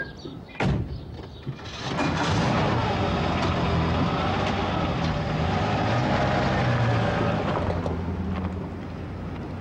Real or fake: real